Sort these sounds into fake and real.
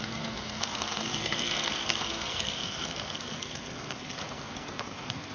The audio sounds fake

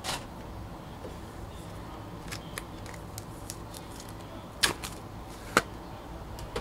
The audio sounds real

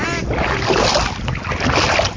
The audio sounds real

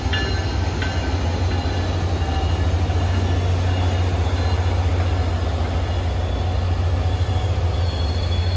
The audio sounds real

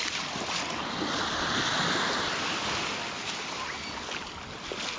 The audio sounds real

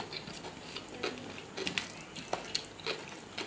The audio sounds real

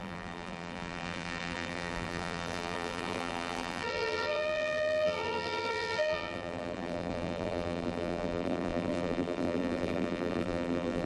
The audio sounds fake